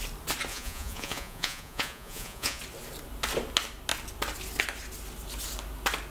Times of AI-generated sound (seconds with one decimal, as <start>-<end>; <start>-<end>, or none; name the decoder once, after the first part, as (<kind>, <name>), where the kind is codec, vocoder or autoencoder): 0.5-2.6 (vocoder, Vocos)